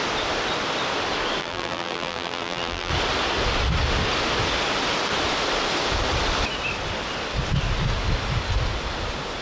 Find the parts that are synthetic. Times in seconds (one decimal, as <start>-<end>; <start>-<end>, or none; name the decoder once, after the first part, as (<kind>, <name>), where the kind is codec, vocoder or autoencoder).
1.4-2.9 (vocoder, BigVGAN v2)